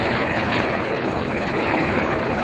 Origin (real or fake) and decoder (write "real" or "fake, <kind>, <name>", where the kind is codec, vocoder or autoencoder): fake, codec, HILCodec